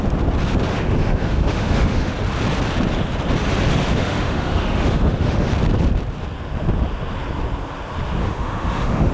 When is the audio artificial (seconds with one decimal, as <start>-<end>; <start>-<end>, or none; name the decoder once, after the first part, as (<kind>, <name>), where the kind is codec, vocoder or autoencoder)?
0.7-2.1 (autoencoder, DAC-VAE); 3.7-5.5; 8.2-9.1